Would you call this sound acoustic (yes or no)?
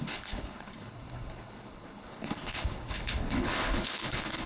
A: no